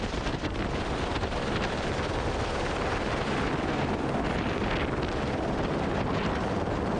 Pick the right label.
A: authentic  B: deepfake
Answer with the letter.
A